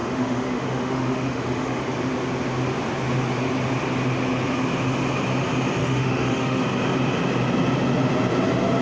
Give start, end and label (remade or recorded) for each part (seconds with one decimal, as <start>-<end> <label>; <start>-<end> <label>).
0.0-1.8 remade; 1.8-5.8 recorded; 5.8-6.6 remade; 6.6-8.8 recorded